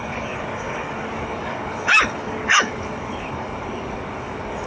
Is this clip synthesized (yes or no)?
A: yes